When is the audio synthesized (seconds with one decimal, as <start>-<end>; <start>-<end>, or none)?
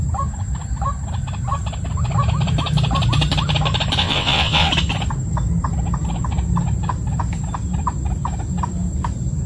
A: 4.0-4.7